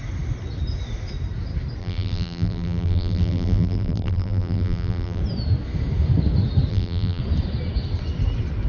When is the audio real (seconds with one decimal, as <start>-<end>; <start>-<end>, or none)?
0.0-1.8; 5.2-6.7; 7.2-8.7